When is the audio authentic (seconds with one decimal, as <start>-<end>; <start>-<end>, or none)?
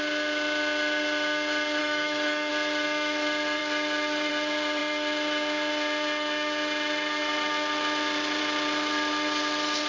0.0-1.8; 2.5-9.9